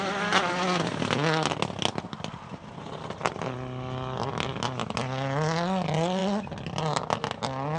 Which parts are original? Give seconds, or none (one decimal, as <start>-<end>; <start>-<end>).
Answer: 0.0-7.8